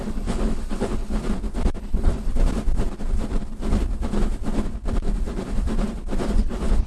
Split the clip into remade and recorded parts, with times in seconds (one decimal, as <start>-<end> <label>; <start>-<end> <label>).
0.0-1.2 remade; 1.2-1.8 recorded; 1.8-2.3 remade; 2.3-6.4 recorded; 6.4-6.9 remade